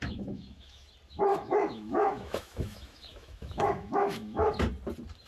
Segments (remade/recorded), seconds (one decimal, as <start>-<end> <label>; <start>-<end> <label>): 0.0-0.9 remade; 0.9-1.3 recorded; 1.3-4.5 remade; 4.5-5.3 recorded